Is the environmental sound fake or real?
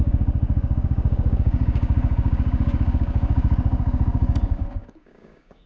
fake